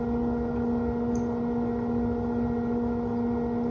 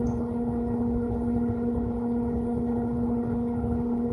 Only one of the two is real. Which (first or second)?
first